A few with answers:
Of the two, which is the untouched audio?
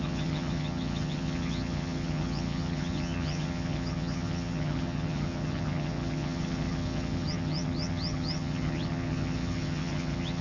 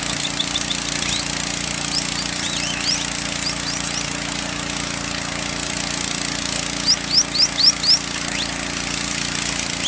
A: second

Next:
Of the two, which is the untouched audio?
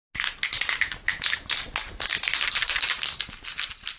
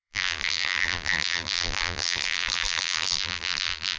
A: first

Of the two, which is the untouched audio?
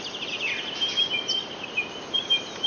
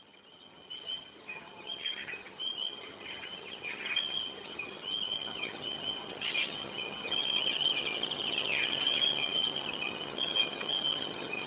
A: first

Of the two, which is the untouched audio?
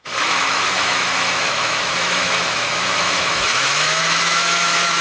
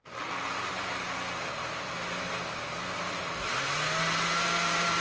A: second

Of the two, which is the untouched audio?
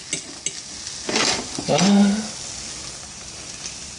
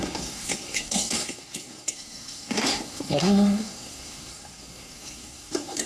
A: first